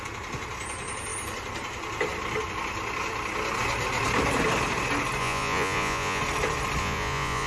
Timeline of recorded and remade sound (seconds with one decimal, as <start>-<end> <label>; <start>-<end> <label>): 0.0-5.2 recorded; 5.2-6.2 remade; 6.2-6.8 recorded; 6.8-7.5 remade